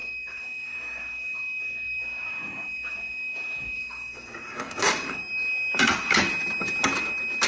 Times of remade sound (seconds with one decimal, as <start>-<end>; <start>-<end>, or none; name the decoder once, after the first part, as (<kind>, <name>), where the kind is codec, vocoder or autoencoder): 0.0-5.2 (codec, DAC)